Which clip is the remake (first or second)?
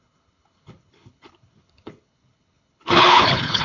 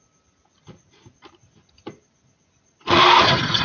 first